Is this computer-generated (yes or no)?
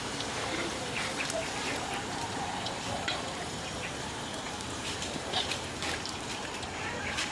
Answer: yes